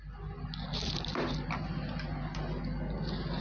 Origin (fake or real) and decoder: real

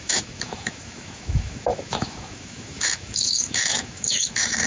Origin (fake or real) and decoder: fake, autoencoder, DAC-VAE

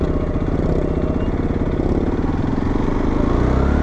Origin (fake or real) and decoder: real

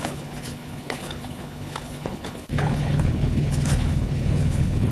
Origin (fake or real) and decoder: fake, codec, HILCodec